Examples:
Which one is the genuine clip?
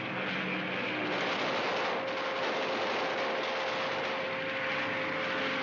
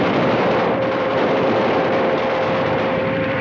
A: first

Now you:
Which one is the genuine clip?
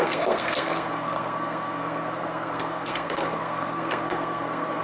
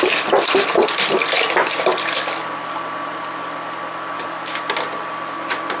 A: second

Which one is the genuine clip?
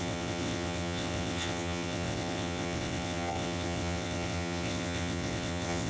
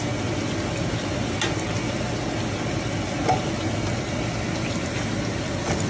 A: second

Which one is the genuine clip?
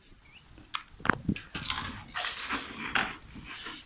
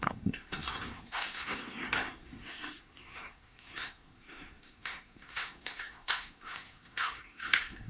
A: first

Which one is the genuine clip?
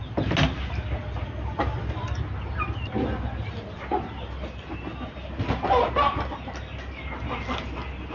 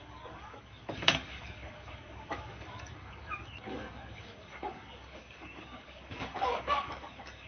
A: first